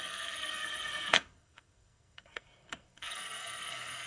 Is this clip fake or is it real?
fake